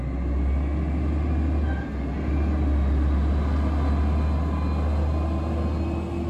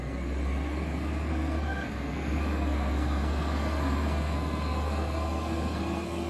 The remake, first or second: second